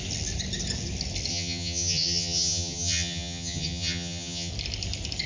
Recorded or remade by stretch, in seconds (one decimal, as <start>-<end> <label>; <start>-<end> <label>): 0.0-1.3 recorded; 1.3-4.5 remade; 4.5-5.3 recorded